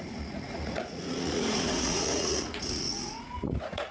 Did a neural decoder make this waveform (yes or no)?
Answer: yes